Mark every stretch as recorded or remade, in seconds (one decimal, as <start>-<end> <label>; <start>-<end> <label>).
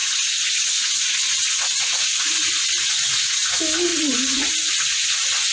0.0-3.3 remade; 3.3-3.9 recorded; 3.9-4.5 remade; 4.5-5.5 recorded